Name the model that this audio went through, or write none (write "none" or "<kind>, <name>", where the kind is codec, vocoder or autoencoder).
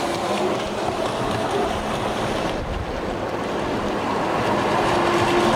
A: none